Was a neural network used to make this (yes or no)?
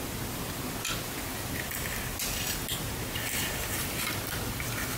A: no